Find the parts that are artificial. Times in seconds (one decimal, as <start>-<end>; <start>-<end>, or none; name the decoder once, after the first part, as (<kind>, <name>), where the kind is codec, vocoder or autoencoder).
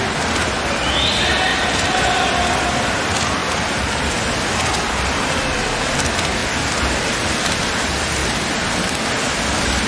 1.5-2.3 (vocoder, BigVGAN v2); 3.4-4.8; 6.4-7.6